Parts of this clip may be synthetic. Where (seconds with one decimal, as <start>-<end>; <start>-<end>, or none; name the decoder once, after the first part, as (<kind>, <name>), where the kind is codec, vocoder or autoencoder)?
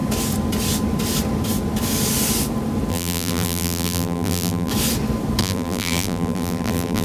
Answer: 2.9-4.7 (vocoder, BigVGAN v2); 5.4-7.0